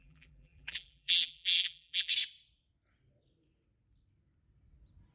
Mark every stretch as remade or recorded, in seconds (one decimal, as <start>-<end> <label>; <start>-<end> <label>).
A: 0.0-2.1 remade; 2.1-5.1 recorded